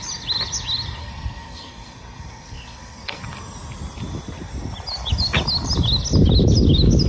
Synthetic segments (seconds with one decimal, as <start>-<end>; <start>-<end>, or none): 1.0-3.2